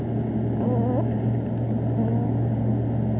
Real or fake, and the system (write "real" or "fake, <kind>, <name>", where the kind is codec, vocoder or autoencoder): real